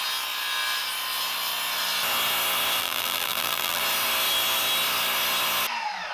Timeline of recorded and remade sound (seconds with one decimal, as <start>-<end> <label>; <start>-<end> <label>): 0.0-2.8 recorded; 2.8-3.8 remade; 3.8-6.1 recorded

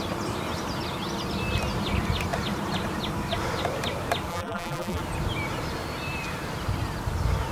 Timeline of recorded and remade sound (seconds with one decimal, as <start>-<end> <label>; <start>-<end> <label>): 0.0-4.3 recorded; 4.3-5.0 remade; 5.0-7.5 recorded

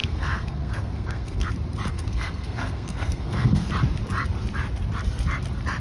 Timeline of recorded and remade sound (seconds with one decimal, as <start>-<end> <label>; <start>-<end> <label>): 0.0-1.5 remade; 1.5-1.9 recorded; 1.9-3.7 remade; 3.7-5.8 recorded

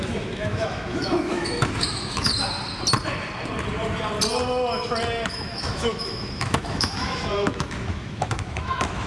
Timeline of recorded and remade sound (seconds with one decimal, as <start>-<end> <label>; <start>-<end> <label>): 0.0-2.3 remade; 2.3-5.3 recorded; 5.3-9.1 remade